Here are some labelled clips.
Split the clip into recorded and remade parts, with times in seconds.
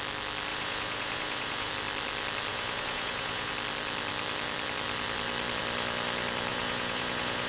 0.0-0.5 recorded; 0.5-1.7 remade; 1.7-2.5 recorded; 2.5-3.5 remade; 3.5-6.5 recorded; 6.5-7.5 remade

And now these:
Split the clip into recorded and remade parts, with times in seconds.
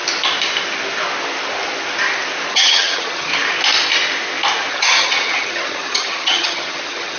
0.0-2.5 recorded; 2.5-3.3 remade; 3.3-4.7 recorded; 4.7-7.2 remade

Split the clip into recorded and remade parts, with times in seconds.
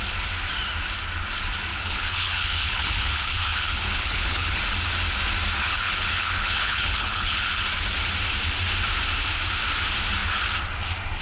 0.0-1.7 recorded; 1.7-4.6 remade; 4.6-5.6 recorded; 5.6-7.5 remade; 7.5-11.2 recorded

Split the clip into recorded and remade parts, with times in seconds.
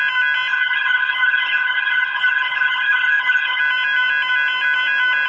0.0-0.5 recorded; 0.5-3.6 remade; 3.6-5.3 recorded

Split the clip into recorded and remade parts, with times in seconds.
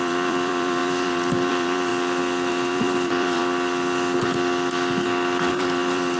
0.0-1.9 remade; 1.9-2.5 recorded; 2.5-3.4 remade; 3.4-5.5 recorded; 5.5-6.2 remade